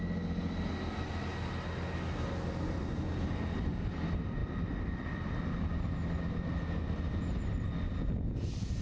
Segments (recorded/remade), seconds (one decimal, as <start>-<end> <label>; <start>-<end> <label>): 0.0-8.8 recorded